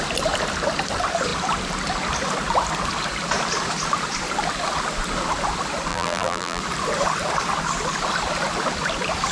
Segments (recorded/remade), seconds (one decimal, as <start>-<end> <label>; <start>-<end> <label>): 0.0-5.9 recorded; 5.9-6.6 remade; 6.6-9.3 recorded